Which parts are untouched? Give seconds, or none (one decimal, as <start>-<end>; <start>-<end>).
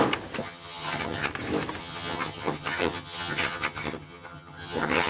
0.0-0.4; 1.3-1.8